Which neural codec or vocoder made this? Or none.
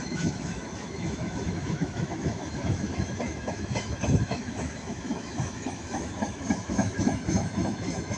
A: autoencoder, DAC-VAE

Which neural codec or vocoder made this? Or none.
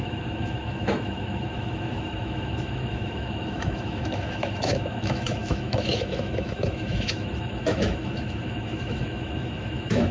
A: autoencoder, DAC-VAE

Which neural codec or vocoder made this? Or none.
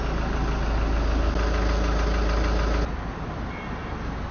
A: none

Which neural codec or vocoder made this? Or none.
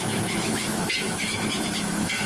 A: autoencoder, DAC-VAE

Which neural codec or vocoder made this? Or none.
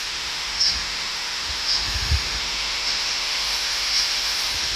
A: autoencoder, DAC-VAE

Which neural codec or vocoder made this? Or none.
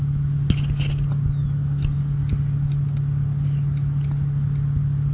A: none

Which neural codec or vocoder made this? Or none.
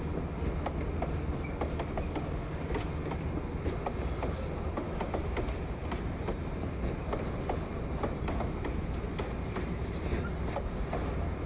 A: none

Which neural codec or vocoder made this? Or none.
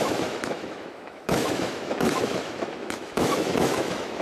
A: autoencoder, DAC-VAE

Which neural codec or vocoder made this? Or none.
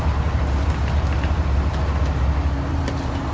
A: none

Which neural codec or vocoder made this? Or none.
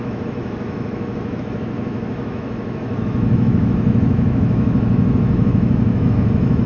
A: autoencoder, DAC-VAE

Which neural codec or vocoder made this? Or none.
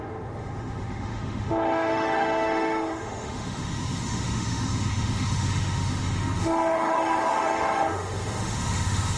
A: autoencoder, DAC-VAE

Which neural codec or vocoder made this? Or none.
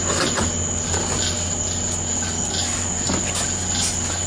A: none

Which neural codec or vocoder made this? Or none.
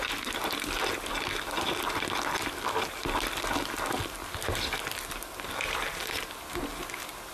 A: none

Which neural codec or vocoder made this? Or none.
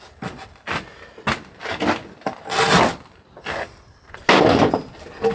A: none